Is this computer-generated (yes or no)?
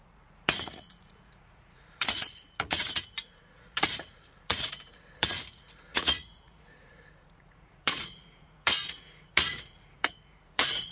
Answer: yes